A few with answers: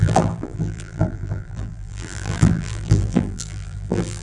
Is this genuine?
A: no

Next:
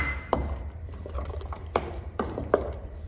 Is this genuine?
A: no